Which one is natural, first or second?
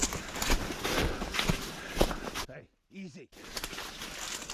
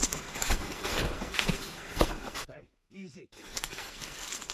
first